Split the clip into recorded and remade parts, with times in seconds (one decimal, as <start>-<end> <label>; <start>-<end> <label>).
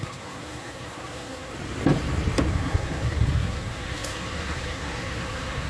0.0-1.5 remade; 1.5-2.5 recorded; 2.5-5.7 remade